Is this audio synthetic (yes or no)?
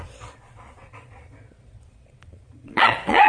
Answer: yes